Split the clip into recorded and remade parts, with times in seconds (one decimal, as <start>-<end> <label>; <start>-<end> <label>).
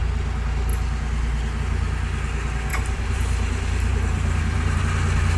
0.0-2.7 recorded; 2.7-4.8 remade; 4.8-5.4 recorded